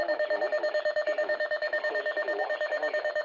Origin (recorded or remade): recorded